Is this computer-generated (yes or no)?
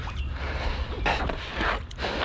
no